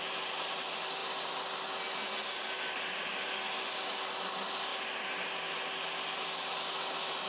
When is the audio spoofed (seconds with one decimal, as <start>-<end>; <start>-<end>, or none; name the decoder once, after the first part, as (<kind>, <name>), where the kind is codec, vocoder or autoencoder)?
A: none